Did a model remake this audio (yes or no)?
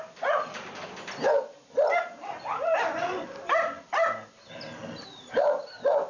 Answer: no